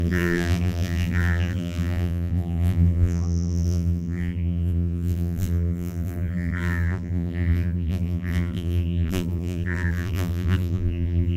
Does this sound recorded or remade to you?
remade